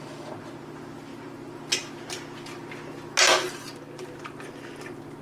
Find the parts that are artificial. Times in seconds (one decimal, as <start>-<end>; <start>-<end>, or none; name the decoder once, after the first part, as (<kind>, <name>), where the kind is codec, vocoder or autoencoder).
none